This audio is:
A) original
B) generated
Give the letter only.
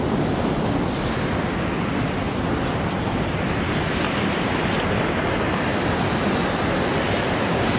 A